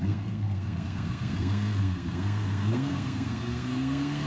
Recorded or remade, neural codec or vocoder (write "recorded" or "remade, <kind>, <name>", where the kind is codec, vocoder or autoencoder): remade, codec, SNAC